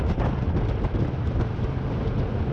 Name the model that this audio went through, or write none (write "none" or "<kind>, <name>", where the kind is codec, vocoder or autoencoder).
none